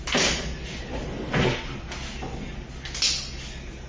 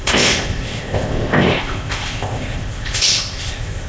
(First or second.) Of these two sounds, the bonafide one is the first